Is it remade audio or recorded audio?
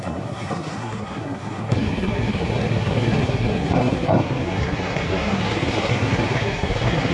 remade